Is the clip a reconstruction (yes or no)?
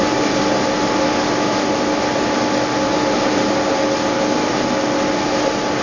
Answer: no